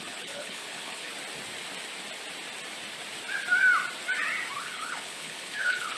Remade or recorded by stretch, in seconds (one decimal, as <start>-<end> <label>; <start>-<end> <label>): 0.0-1.1 remade; 1.1-4.6 recorded; 4.6-6.0 remade